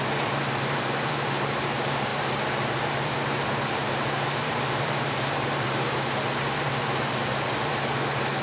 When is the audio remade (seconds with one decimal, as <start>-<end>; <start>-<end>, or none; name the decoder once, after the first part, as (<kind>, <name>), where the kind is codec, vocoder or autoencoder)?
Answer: 0.0-8.4 (vocoder, BigVGAN v2)